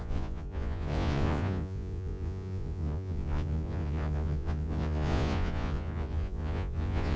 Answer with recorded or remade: remade